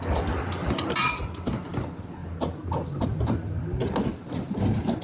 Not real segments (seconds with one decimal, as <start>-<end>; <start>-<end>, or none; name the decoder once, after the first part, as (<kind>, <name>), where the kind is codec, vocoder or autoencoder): none

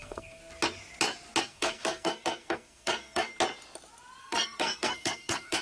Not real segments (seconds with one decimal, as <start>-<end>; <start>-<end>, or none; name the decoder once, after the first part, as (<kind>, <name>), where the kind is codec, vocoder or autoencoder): 0.0-0.4 (codec, SNAC); 1.4-3.3; 4.2-5.6

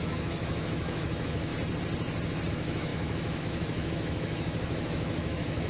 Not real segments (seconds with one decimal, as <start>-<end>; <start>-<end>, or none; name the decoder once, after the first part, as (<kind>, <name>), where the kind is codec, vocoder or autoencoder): 0.0-1.5 (autoencoder, DAC-VAE); 2.5-5.7